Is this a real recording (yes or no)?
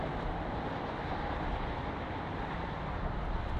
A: yes